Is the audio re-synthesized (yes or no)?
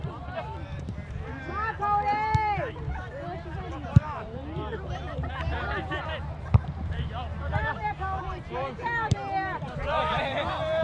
yes